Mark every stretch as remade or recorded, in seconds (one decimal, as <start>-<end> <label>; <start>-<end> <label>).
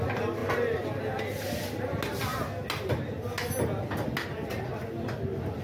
0.0-5.6 recorded